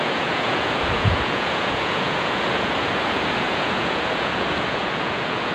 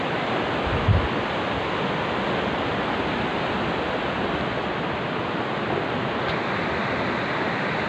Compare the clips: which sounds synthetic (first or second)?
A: first